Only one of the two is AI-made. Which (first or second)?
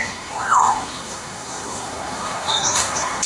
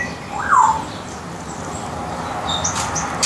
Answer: first